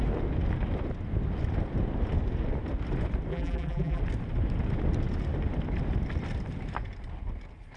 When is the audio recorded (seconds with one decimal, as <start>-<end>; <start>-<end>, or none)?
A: 0.0-3.3; 4.0-7.8